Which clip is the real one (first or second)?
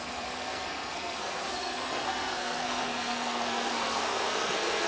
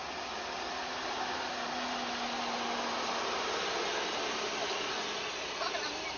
second